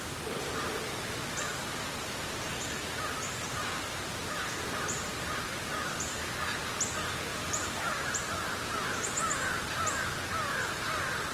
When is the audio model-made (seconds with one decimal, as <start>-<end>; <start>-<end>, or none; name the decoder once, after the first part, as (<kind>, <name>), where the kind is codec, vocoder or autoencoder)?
1.5-4.5 (vocoder, BigVGAN v2); 7.3-8.2